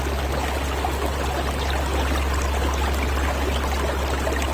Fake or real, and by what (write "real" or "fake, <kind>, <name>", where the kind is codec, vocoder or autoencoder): real